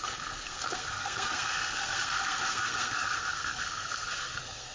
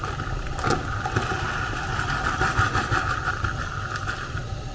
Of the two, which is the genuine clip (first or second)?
second